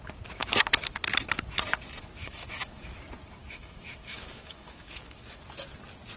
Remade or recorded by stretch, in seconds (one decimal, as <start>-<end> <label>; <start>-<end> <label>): 0.0-2.2 recorded; 2.2-3.0 remade; 3.0-3.4 recorded; 3.4-5.4 remade; 5.4-6.2 recorded

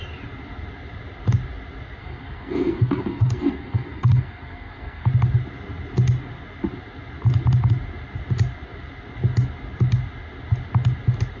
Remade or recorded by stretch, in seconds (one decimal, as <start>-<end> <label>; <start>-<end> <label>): 0.0-2.0 recorded; 2.0-5.1 remade; 5.1-11.4 recorded

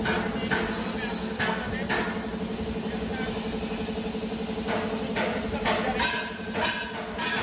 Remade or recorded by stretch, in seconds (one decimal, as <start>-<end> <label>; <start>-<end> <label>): 0.0-1.2 recorded; 1.2-1.7 remade; 1.7-7.4 recorded